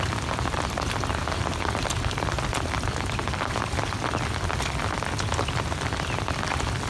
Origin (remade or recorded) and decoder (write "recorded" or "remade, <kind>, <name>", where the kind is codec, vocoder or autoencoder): recorded